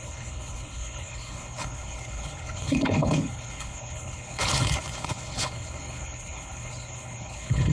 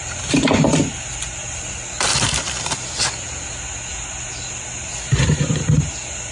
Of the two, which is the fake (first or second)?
first